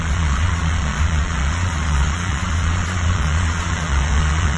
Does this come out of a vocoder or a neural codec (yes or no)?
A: yes